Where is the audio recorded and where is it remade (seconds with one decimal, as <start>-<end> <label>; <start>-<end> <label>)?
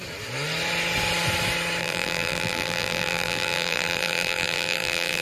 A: 0.0-1.8 recorded; 1.8-5.2 remade